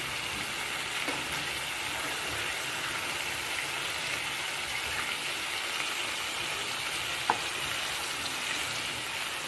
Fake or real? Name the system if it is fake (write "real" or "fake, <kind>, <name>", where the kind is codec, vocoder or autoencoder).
real